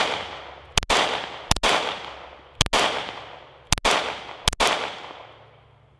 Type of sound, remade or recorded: recorded